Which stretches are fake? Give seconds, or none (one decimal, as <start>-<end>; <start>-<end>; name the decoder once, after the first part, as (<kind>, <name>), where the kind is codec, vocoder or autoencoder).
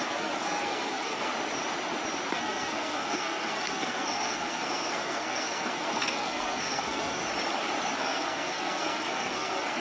0.0-1.3 (codec, SNAC); 2.3-7.2; 8.0-9.8